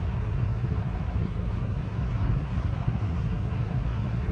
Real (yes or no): no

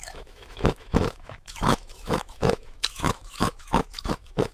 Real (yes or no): no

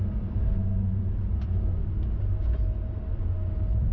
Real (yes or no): yes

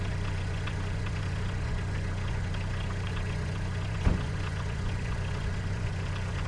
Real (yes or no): no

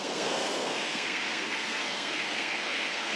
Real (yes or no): no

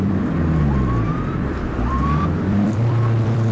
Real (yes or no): no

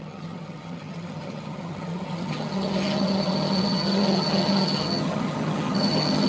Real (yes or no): no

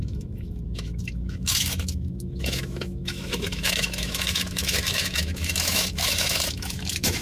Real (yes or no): no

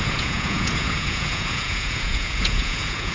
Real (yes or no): no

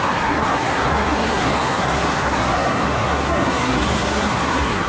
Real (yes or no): no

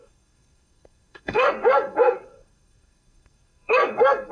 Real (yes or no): no